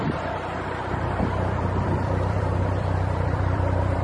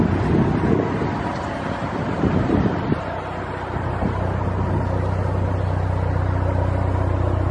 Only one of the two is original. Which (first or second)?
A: second